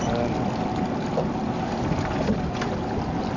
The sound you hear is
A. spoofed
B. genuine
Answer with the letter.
A